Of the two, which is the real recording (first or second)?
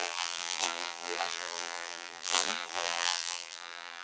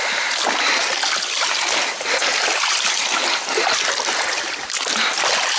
second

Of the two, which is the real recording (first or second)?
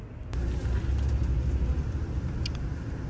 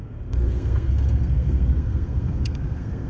first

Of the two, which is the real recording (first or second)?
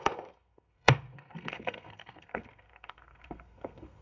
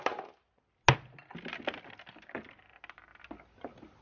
second